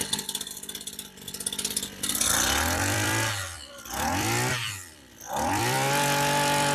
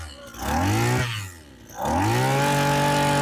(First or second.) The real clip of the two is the second